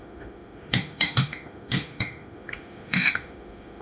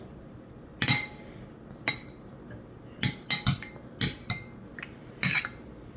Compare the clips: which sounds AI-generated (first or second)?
first